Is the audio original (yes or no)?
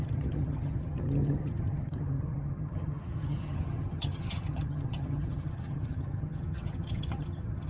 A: no